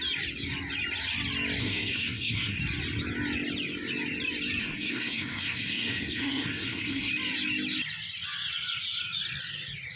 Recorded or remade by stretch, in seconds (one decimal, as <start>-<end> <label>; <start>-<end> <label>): 0.0-1.6 recorded; 1.6-2.6 remade; 2.6-4.6 recorded; 4.6-7.1 remade; 7.1-10.0 recorded

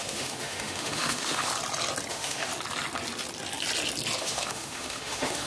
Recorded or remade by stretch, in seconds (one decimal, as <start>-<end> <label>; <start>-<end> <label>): 0.0-1.5 remade; 1.5-2.1 recorded; 2.1-2.5 remade; 2.5-4.2 recorded; 4.2-5.5 remade

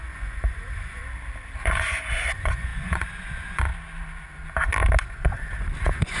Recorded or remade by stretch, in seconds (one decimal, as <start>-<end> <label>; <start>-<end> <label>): 0.0-1.0 remade; 1.0-1.6 recorded; 1.6-3.7 remade; 3.7-5.0 recorded; 5.0-6.2 remade